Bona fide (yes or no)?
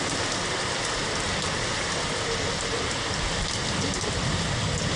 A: yes